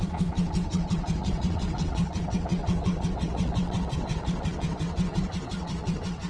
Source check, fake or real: fake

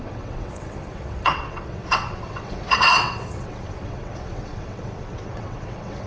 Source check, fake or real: fake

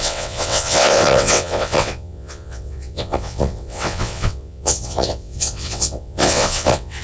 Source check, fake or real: fake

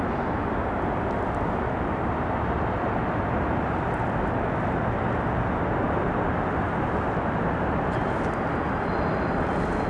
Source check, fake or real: real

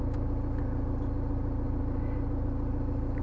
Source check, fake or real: real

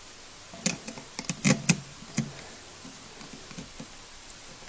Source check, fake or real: real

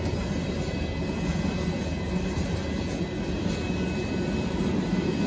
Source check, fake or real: real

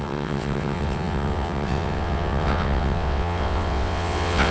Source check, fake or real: fake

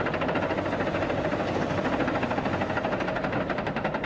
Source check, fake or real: real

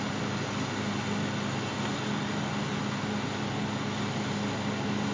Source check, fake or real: real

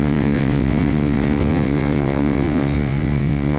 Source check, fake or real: fake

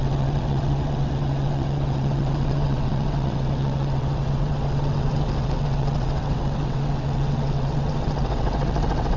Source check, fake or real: fake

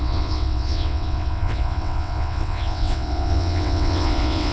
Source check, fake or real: fake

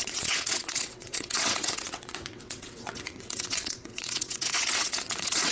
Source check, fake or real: fake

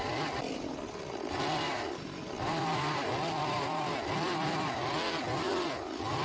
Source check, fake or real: real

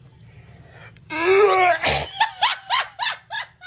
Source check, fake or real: real